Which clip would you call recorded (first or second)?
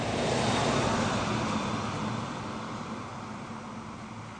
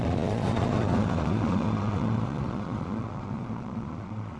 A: first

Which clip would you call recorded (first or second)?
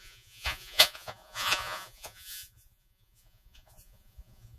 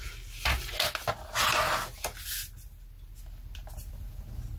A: second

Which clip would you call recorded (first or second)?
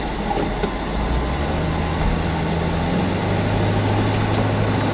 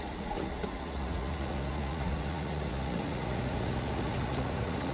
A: first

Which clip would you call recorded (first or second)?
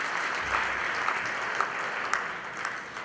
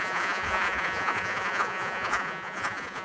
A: first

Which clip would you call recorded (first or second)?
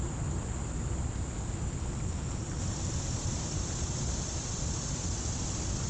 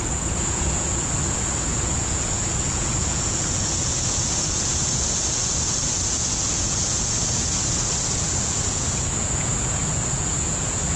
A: first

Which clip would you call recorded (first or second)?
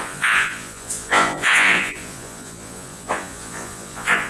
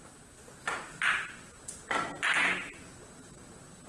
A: second